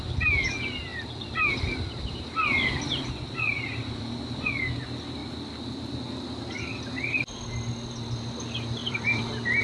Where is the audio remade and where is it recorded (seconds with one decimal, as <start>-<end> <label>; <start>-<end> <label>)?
0.0-0.9 recorded; 0.9-4.5 remade; 4.5-5.2 recorded; 5.2-5.9 remade; 5.9-8.8 recorded; 8.8-9.6 remade